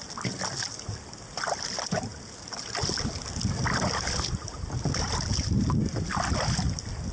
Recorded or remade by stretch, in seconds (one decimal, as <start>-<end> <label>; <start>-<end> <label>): 0.0-7.1 recorded